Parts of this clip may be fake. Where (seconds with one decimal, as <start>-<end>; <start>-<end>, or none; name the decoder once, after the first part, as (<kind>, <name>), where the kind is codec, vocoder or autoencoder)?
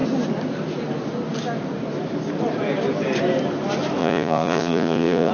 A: 4.0-5.3 (vocoder, Vocos)